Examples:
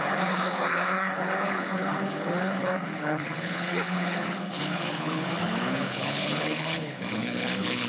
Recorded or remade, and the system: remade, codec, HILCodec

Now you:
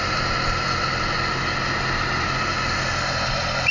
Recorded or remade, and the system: recorded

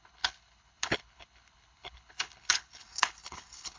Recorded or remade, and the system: remade, codec, HILCodec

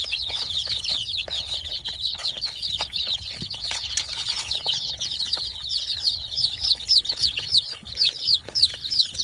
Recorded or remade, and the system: remade, codec, HILCodec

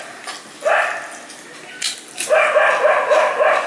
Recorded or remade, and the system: recorded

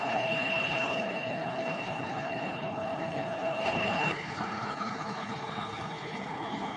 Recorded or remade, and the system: remade, codec, HILCodec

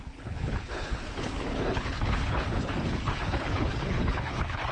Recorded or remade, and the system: remade, codec, HILCodec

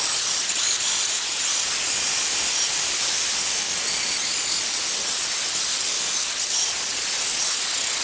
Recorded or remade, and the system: recorded